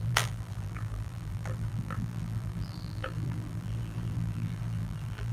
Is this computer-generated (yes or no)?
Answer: yes